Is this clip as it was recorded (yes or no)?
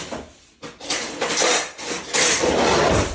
no